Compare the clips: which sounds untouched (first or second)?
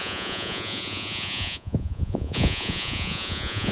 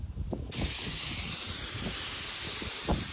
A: second